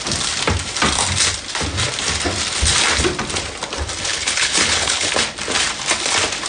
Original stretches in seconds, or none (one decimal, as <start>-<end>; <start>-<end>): 0.0-4.1; 5.1-6.5